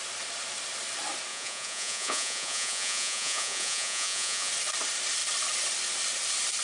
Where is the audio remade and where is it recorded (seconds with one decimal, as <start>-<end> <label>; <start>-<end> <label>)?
0.0-1.3 recorded; 1.3-4.5 remade; 4.5-6.6 recorded